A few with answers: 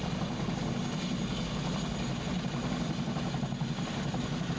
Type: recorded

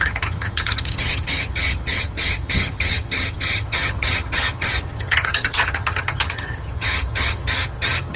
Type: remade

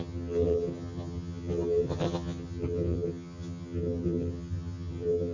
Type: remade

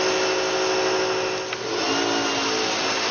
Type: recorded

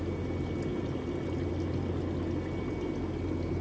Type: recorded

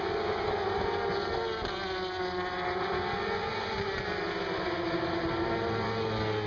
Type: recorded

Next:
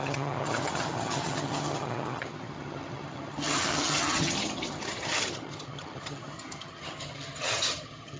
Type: remade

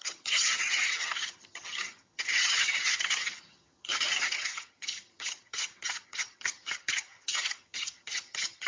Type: remade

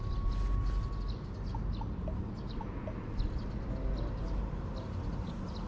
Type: recorded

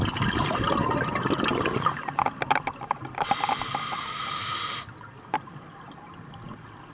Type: recorded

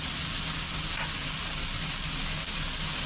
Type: recorded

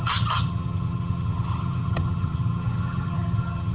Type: remade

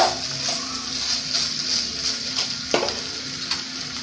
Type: recorded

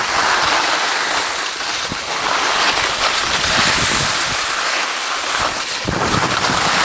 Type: recorded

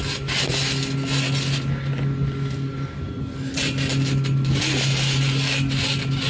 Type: recorded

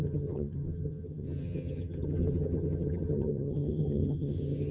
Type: remade